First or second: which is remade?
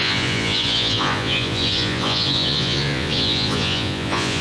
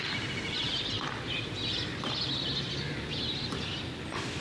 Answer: first